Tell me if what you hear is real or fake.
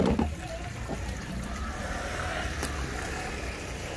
real